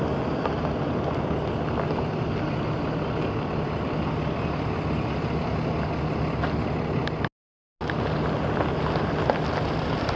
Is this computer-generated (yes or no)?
no